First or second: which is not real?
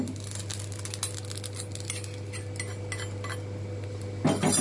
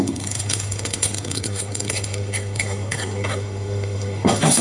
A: second